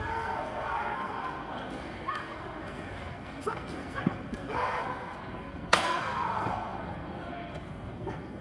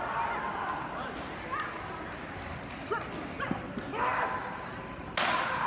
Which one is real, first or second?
second